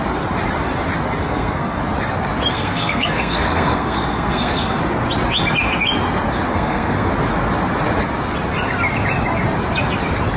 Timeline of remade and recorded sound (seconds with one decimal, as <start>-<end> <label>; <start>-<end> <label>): 0.0-1.2 recorded; 1.2-1.8 remade; 1.8-2.5 recorded; 2.5-4.8 remade; 4.8-6.5 recorded; 6.5-7.1 remade; 7.1-10.4 recorded